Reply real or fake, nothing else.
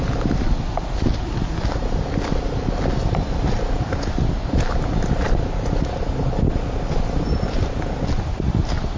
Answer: real